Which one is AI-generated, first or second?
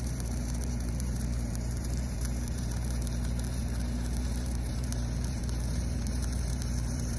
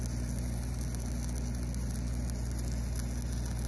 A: first